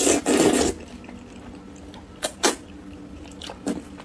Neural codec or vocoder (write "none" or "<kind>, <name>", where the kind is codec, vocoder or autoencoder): none